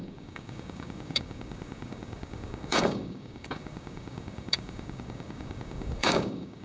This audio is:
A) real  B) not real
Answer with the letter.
B